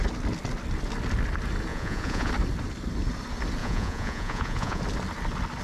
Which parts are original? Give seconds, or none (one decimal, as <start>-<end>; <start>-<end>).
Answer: 0.0-1.7; 2.3-3.6; 4.8-5.6